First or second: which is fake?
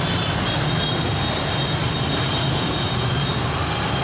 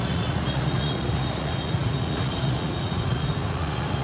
second